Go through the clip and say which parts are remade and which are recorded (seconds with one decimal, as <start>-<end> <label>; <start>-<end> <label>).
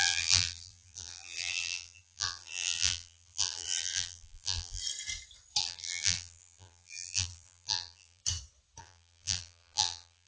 0.0-4.8 remade; 4.8-5.6 recorded; 5.6-8.2 remade; 8.2-8.8 recorded; 8.8-10.3 remade